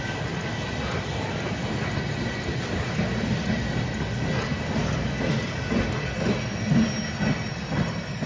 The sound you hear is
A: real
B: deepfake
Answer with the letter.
A